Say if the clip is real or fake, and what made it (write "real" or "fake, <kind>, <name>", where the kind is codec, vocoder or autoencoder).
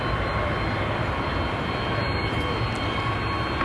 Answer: real